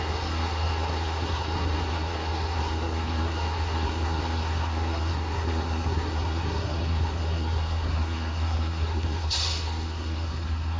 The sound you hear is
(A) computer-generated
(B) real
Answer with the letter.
A